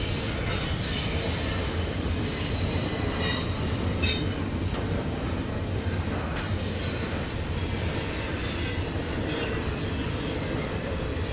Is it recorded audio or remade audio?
recorded